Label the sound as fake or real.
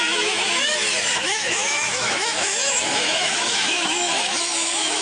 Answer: fake